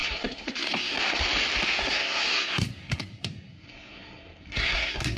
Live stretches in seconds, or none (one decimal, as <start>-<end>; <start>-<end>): 1.0-1.8